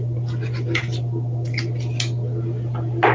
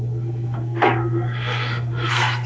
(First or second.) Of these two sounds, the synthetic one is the second